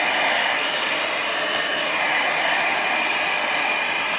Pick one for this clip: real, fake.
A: real